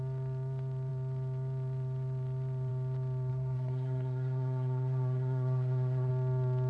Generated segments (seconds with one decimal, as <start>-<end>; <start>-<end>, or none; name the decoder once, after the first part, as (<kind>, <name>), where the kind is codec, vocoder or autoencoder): 3.3-6.1 (codec, SNAC)